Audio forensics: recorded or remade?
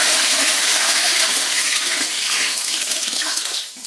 remade